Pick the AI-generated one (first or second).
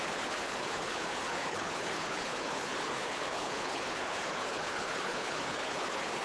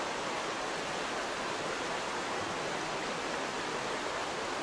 first